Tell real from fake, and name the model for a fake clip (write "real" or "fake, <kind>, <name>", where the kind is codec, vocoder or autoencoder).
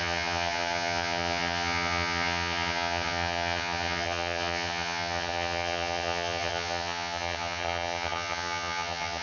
fake, vocoder, HiFi-GAN